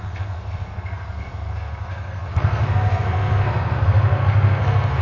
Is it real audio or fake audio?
fake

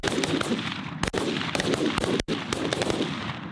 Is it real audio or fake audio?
real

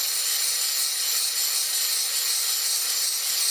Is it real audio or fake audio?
real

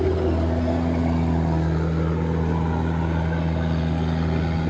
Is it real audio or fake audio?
real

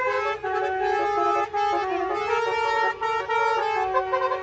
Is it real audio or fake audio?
real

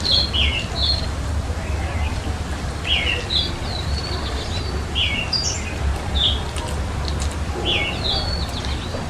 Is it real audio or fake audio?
real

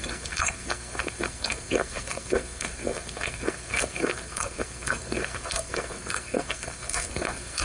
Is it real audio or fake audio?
fake